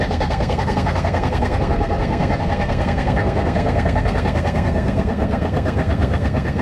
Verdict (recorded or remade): remade